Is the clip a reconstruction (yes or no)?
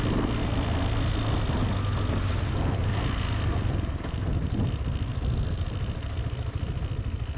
no